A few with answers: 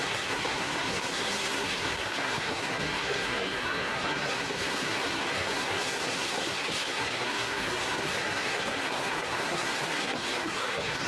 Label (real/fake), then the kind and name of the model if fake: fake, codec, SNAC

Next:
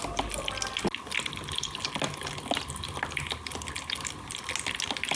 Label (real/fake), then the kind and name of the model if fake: real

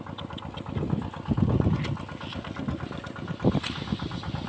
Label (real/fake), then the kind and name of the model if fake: real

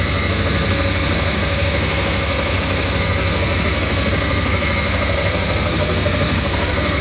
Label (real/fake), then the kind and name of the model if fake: fake, codec, SNAC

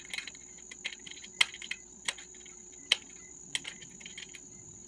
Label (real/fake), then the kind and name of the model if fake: real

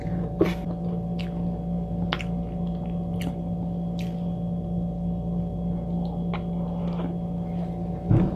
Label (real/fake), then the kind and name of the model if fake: real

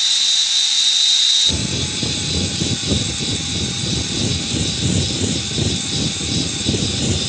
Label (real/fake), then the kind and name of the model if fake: real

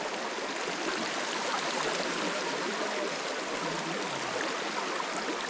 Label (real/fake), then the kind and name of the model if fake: real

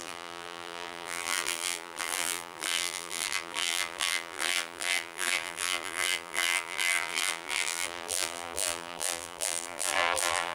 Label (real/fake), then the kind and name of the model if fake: fake, vocoder, BigVGAN v2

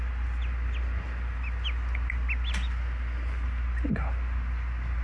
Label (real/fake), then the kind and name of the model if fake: real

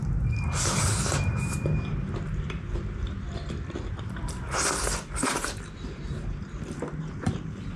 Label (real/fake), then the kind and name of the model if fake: fake, vocoder, BigVGAN v2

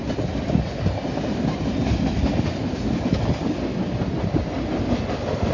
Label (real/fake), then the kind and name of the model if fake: real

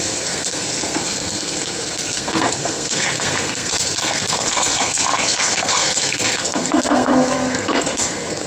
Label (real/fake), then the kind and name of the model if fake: fake, codec, SNAC